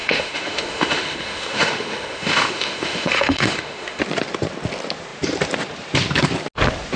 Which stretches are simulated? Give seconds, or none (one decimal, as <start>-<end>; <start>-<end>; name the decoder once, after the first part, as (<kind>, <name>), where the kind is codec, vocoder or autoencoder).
0.0-4.0 (autoencoder, DAC-VAE)